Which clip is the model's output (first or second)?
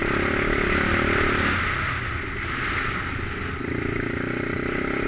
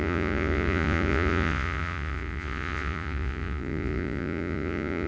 second